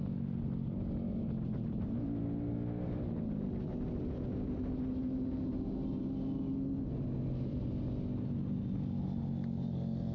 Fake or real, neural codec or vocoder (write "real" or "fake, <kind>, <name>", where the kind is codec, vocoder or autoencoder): real